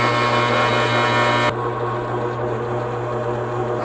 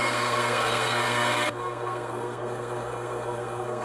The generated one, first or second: second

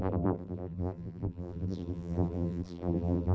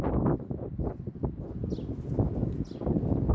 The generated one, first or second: first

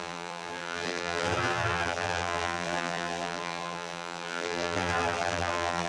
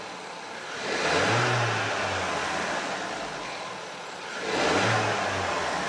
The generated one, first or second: first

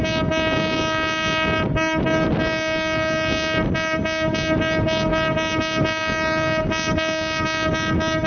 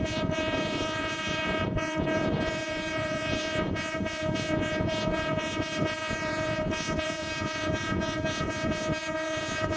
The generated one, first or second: second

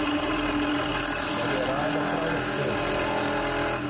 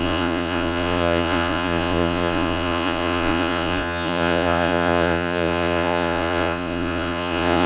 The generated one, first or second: second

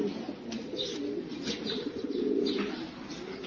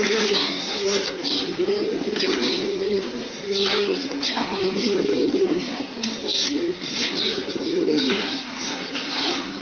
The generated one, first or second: second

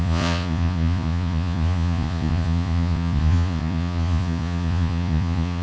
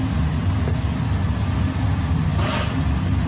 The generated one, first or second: first